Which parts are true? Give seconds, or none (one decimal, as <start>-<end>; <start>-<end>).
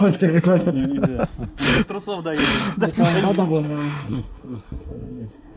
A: 0.8-3.4